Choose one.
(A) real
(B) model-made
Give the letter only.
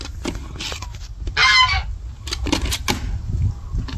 A